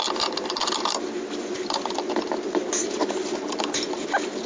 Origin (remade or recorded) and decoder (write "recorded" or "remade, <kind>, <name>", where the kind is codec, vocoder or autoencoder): recorded